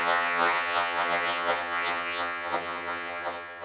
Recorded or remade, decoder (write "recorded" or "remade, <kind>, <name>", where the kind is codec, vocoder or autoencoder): remade, vocoder, HiFi-GAN